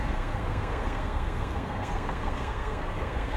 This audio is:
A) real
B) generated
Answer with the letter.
B